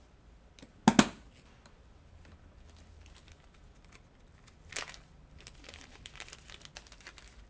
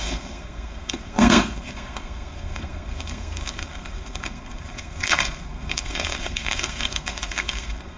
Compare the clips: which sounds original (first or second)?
first